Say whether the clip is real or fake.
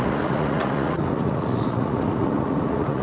fake